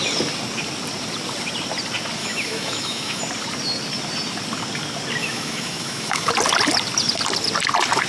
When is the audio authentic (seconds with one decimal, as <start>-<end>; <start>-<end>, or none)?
0.0-2.2; 3.2-5.2; 6.3-8.1